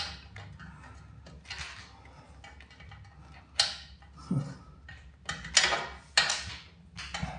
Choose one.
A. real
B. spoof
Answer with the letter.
A